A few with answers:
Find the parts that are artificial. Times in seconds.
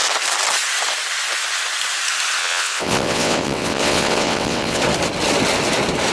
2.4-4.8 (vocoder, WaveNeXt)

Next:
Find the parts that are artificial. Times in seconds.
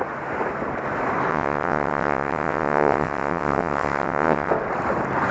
1.3-4.5 (vocoder, WaveNeXt)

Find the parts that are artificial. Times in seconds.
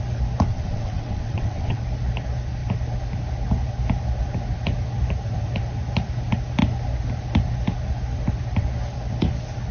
0.5-1.8 (vocoder, WaveNeXt)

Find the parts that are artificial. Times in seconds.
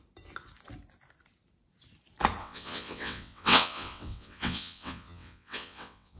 2.4-6.2 (vocoder, WaveNeXt)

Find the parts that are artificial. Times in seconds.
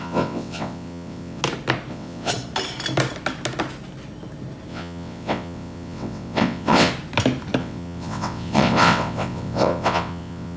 0.0-1.4 (vocoder, WaveNeXt); 1.9-2.3; 4.7-6.9; 7.6-10.6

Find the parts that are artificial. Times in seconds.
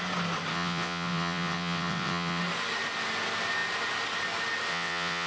0.5-2.4 (vocoder, WaveNeXt); 4.7-5.3